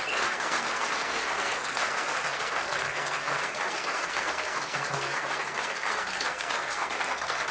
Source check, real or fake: fake